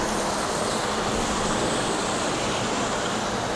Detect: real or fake real